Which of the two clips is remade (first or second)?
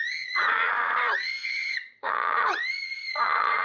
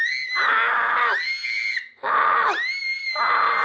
first